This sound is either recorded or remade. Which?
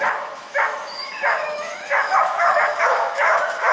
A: remade